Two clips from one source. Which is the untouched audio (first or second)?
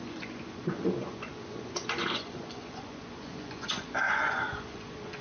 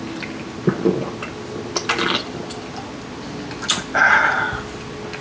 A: second